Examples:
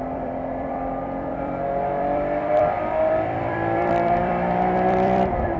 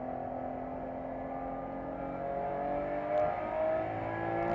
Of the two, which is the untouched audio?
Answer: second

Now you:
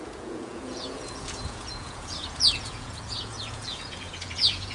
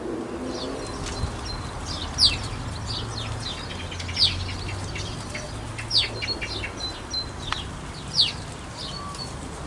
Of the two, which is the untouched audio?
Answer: second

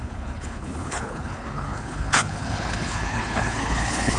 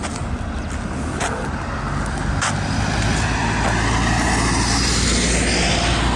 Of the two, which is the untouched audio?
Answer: second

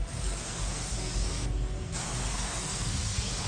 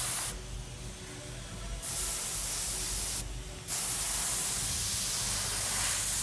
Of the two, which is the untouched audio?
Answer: second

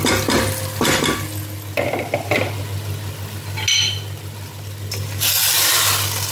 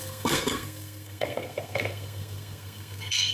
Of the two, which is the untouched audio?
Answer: first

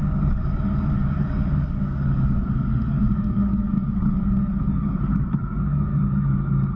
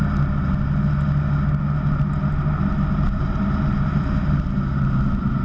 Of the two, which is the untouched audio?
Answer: second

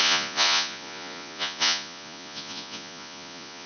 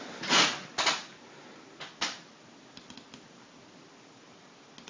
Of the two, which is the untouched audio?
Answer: second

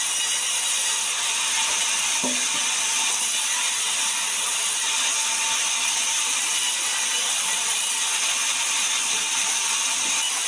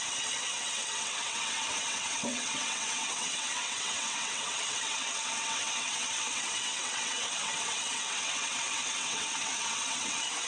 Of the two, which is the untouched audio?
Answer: first